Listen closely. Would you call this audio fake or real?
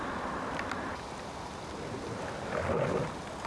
real